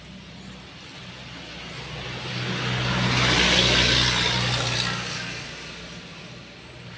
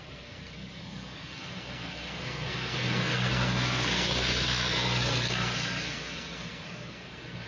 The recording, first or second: first